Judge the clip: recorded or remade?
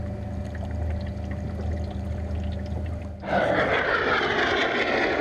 recorded